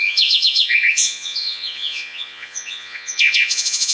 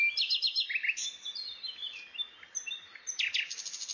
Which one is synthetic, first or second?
first